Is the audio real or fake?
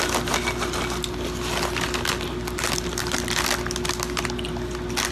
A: real